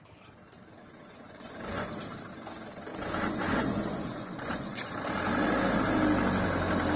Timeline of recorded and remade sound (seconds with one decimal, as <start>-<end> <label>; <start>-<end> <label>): 0.0-0.8 recorded; 0.8-1.9 remade; 1.9-2.9 recorded; 2.9-5.0 remade; 5.0-7.0 recorded